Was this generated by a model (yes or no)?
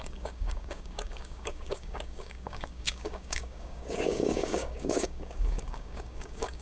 yes